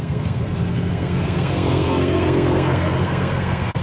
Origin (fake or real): fake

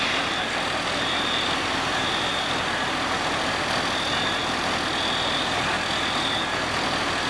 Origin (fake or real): real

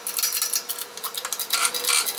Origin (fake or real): real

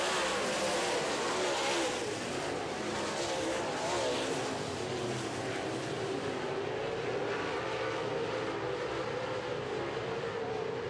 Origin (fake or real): real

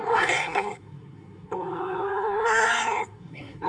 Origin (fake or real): fake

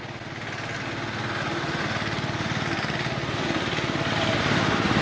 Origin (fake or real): real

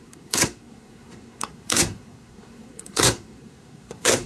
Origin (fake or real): fake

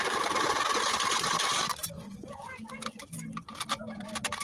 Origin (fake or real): real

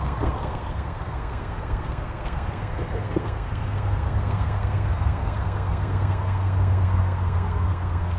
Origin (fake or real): fake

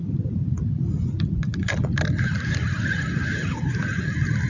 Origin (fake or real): real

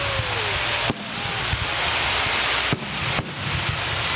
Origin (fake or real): real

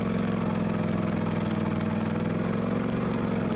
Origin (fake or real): real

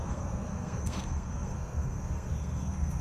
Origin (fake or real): fake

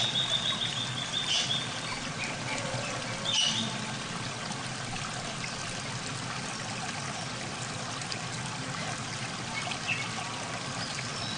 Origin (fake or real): real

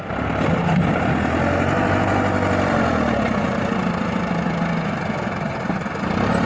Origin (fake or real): real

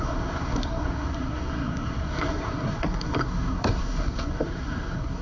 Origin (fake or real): fake